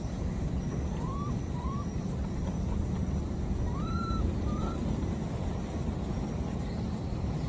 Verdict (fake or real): fake